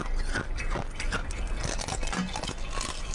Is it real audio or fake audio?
real